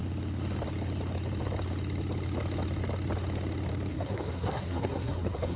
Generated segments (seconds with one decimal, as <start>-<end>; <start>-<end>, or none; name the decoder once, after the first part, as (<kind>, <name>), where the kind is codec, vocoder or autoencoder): 3.9-5.6 (codec, SNAC)